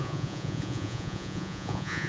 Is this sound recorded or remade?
remade